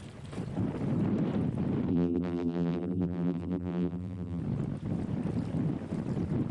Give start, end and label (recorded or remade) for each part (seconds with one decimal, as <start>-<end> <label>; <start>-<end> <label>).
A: 0.0-1.9 recorded; 1.9-4.4 remade; 4.4-6.5 recorded